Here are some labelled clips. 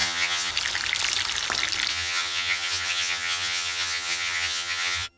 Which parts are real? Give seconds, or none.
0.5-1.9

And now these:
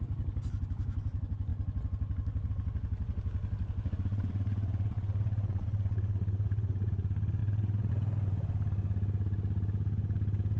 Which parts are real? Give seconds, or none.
0.0-4.1; 6.9-7.4; 7.9-10.6